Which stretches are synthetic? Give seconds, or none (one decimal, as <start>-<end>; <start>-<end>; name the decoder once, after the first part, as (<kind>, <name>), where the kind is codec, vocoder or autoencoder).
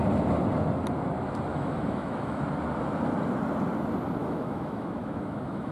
1.5-2.4 (autoencoder, DAC-VAE); 4.2-5.7